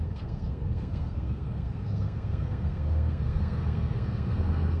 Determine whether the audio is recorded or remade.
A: remade